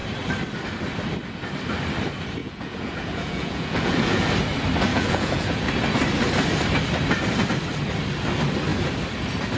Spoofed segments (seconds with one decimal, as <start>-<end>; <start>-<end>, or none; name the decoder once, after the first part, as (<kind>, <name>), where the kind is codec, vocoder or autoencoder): 2.4-4.3 (vocoder, Vocos); 4.9-5.7

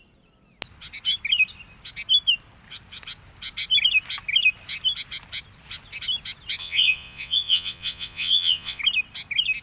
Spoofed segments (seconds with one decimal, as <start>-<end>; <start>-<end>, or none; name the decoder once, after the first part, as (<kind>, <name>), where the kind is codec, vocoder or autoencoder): 6.6-8.8 (vocoder, Vocos)

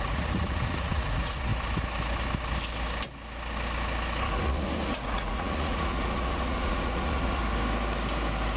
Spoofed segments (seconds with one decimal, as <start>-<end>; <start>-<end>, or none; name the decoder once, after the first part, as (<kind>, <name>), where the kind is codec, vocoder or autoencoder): 0.0-1.5 (vocoder, Vocos); 4.3-7.4

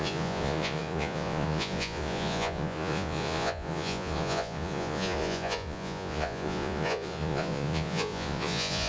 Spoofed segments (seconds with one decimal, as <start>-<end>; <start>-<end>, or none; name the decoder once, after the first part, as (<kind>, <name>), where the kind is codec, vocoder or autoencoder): 0.0-8.9 (vocoder, Vocos)

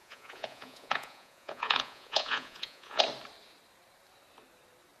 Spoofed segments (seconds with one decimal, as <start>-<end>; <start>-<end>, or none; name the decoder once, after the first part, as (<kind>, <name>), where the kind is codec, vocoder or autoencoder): 0.0-3.0 (vocoder, Vocos)

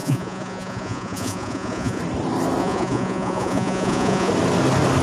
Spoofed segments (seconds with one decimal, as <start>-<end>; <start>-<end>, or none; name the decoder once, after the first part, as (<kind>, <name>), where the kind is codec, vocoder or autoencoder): 0.0-2.0 (vocoder, Vocos); 2.6-4.3

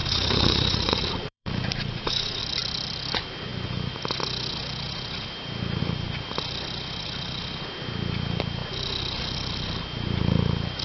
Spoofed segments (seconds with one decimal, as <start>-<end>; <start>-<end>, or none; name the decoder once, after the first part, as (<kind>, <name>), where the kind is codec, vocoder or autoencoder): 0.0-2.4 (vocoder, Vocos)